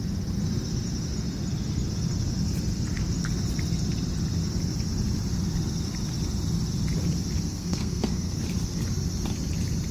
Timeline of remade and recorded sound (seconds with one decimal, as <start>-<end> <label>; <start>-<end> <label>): 0.0-7.5 recorded; 7.5-8.4 remade; 8.4-9.9 recorded